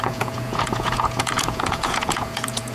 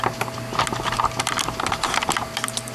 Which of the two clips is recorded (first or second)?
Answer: second